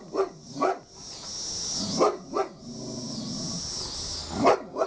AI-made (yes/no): no